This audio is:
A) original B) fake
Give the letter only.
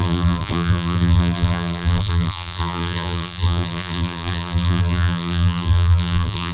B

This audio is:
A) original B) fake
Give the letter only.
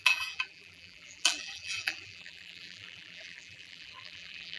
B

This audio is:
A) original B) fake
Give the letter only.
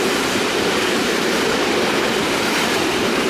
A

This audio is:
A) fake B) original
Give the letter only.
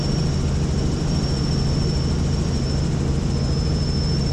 B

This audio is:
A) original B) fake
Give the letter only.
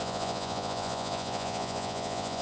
B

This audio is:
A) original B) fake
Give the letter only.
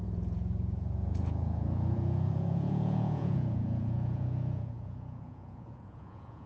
B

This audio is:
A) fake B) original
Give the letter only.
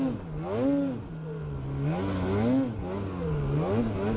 B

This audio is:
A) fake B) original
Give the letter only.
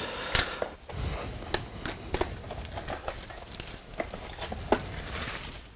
B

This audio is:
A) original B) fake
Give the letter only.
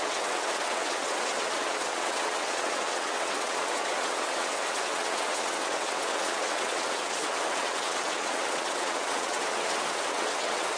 B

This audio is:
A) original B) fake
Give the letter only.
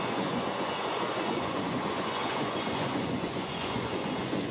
B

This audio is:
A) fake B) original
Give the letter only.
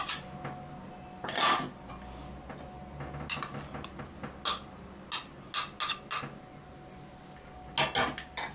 B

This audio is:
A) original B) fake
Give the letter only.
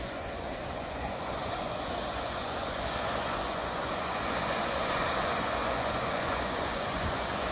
B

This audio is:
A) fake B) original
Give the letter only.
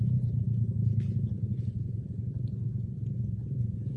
B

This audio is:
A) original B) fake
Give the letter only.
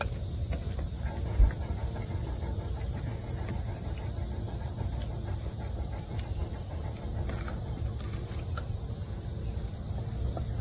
B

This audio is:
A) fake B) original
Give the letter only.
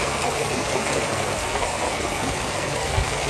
A